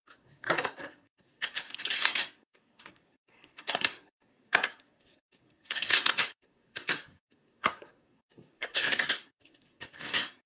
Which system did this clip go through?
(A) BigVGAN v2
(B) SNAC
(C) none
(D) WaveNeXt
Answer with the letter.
B